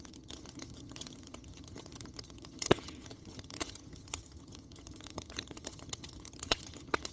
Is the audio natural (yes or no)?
no